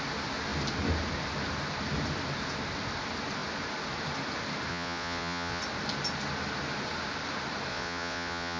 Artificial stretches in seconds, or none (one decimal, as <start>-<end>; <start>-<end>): 4.7-5.6; 7.7-8.6